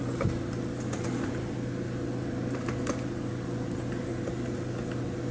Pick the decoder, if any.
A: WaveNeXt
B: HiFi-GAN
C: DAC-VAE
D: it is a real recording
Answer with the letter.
D